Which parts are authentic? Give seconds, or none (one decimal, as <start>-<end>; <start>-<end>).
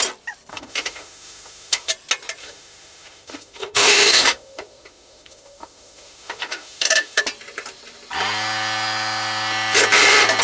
0.0-0.5; 1.9-2.4; 7.2-10.4